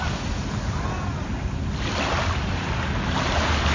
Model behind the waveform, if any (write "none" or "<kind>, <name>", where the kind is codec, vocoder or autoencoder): none